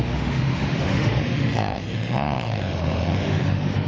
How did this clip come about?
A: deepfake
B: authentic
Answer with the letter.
A